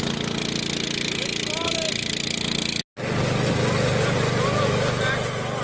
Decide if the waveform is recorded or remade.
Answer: recorded